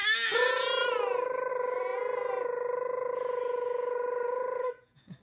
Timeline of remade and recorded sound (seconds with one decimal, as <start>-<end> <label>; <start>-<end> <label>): 0.0-1.9 recorded; 1.9-5.2 remade